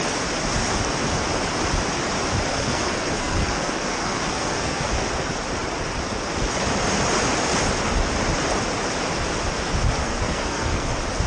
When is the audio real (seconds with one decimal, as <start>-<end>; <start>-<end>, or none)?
0.0-2.5; 4.9-10.0; 10.9-11.3